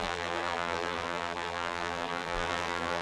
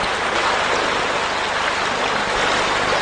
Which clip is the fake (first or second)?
first